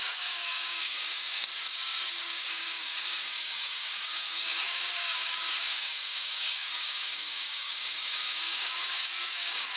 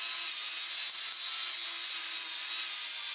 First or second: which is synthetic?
first